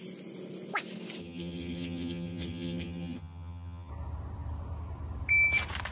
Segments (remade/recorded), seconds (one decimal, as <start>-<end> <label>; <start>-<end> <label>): 0.0-1.2 recorded; 1.2-3.9 remade; 3.9-5.9 recorded

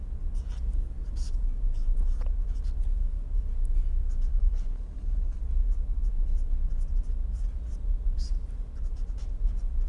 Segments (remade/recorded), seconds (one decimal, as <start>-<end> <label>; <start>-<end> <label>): 0.0-4.3 recorded; 4.3-5.4 remade; 5.4-9.9 recorded

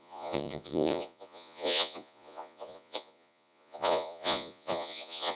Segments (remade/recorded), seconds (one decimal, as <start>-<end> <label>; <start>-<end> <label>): 0.0-5.3 remade

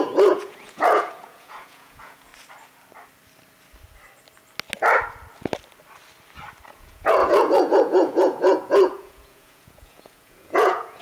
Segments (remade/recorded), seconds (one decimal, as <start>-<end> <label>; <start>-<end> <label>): 0.0-2.3 remade; 2.3-6.7 recorded; 6.7-11.0 remade

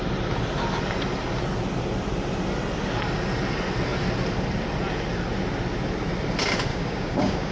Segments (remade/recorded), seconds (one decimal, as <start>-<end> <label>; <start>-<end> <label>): 0.0-6.7 recorded; 6.7-7.5 remade